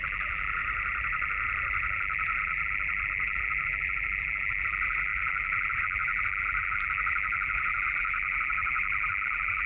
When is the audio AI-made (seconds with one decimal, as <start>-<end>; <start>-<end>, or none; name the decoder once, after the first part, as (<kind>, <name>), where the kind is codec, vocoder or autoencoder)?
0.0-0.6 (vocoder, BigVGAN v2); 1.9-9.7